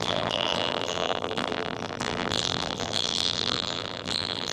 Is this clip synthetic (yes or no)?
yes